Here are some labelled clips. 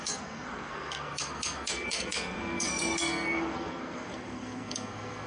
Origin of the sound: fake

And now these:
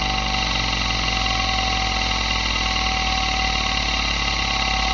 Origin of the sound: real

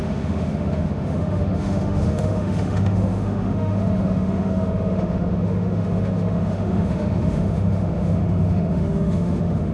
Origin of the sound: fake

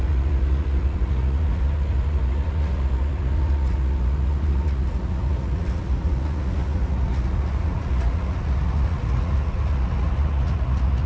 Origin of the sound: fake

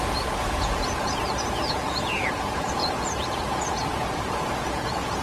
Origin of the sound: fake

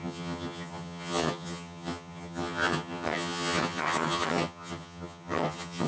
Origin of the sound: fake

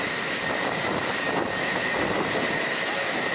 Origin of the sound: real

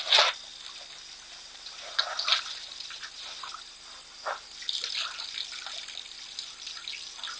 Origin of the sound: real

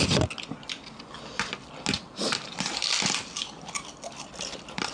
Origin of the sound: real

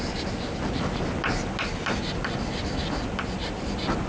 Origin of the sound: real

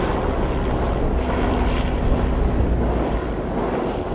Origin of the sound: real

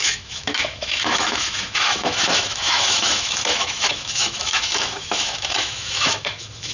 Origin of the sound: fake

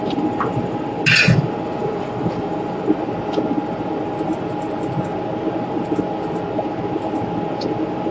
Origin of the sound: real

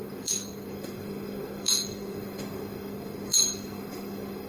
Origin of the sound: fake